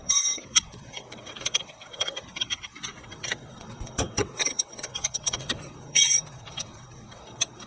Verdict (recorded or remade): remade